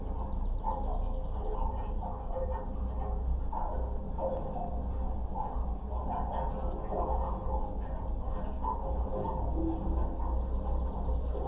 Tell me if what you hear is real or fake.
real